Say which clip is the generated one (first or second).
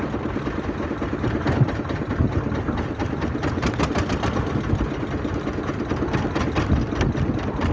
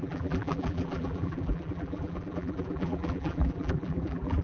second